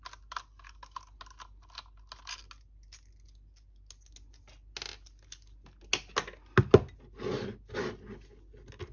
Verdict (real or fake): real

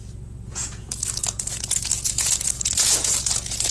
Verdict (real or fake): fake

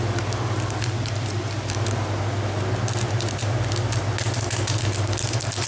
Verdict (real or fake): real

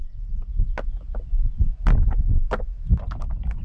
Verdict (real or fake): real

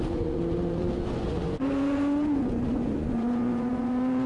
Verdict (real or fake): fake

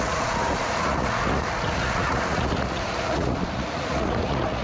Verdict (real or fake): fake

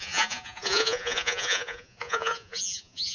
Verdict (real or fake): fake